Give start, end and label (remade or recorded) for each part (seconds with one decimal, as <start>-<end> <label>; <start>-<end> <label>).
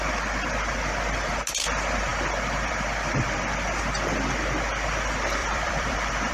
0.0-5.4 recorded; 5.4-6.3 remade